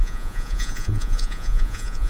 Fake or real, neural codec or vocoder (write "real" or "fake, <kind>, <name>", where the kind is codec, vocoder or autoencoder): fake, vocoder, Vocos